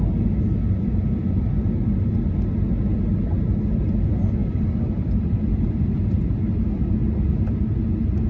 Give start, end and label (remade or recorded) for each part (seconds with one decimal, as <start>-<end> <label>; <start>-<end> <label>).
0.0-4.4 recorded; 4.4-6.2 remade; 6.2-8.3 recorded